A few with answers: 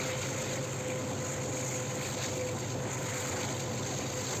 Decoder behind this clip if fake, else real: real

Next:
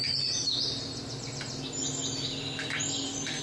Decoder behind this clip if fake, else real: real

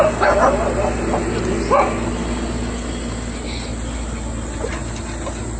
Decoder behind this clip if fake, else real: real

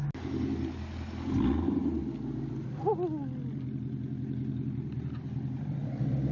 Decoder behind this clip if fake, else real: real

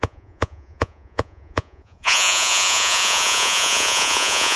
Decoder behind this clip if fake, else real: fake, vocoder, Vocos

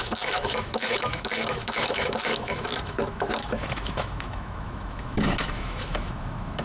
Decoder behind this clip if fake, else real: fake, autoencoder, DAC-VAE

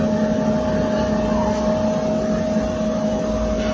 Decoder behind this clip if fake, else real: real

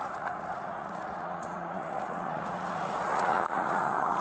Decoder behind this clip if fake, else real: fake, vocoder, Vocos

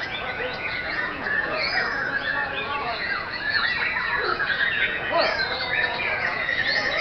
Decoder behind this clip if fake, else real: fake, vocoder, Vocos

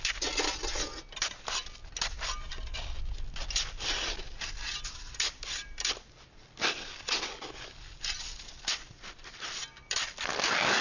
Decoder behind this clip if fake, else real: real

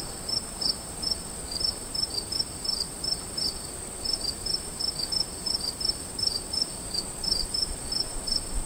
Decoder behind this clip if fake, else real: fake, vocoder, BigVGAN v2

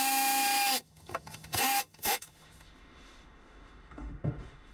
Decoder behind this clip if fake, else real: fake, autoencoder, DAC-VAE